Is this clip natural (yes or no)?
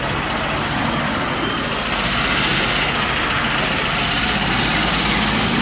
yes